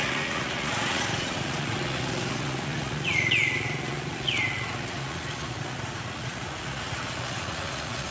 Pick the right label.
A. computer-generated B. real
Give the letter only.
A